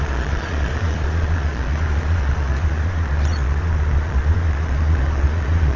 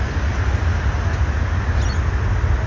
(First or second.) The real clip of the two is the second